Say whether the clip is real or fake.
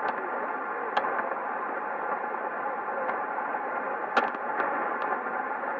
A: real